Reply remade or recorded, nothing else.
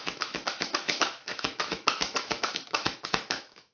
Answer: remade